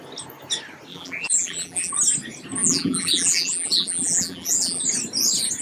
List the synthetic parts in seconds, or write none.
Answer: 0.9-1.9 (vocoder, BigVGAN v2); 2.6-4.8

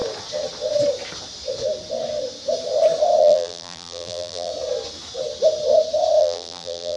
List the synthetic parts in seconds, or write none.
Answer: 3.2-4.5 (vocoder, BigVGAN v2); 6.2-7.0

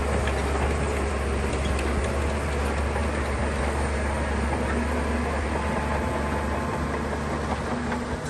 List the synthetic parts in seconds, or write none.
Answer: none

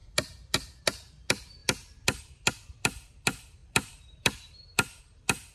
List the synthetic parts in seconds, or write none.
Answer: 0.0-5.5 (vocoder, BigVGAN v2)

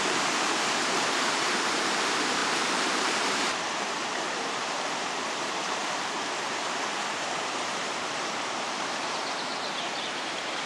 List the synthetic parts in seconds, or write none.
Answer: 0.0-10.7 (vocoder, BigVGAN v2)

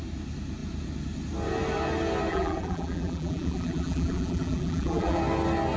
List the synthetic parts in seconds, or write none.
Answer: 2.3-5.2 (vocoder, BigVGAN v2)

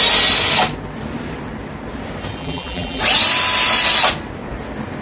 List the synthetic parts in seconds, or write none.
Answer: 2.4-3.0 (vocoder, BigVGAN v2)